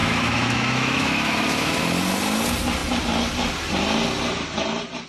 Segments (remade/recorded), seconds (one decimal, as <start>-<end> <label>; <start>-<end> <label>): 0.0-1.8 remade; 1.8-5.1 recorded